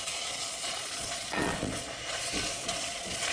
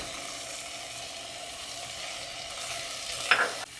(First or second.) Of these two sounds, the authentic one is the second